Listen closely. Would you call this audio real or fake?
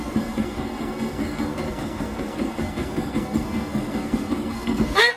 fake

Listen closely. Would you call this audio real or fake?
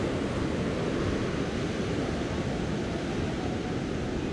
real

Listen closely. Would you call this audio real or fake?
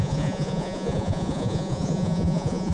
fake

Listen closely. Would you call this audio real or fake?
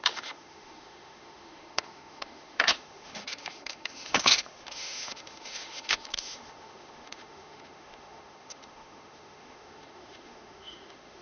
fake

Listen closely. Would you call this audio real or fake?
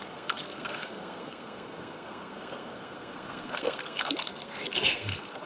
fake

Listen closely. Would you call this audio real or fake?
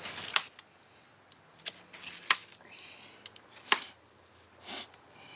real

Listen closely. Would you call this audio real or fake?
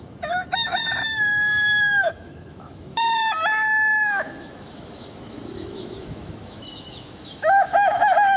fake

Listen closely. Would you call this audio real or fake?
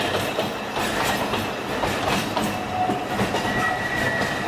real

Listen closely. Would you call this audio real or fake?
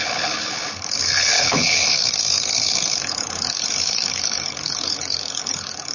fake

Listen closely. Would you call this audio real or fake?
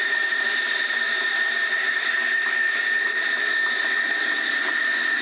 real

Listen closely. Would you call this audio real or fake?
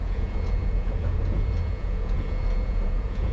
fake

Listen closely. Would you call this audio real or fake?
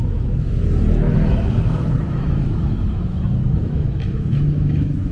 fake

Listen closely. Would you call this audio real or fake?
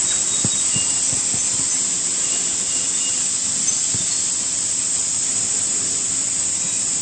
real